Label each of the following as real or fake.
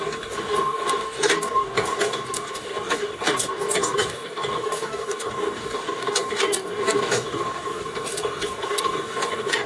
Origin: fake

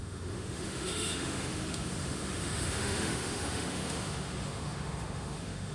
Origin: fake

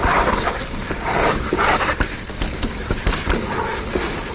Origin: real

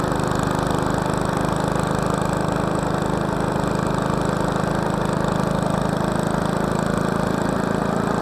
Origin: real